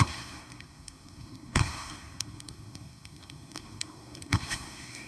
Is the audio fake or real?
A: fake